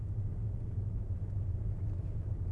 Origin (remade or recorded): recorded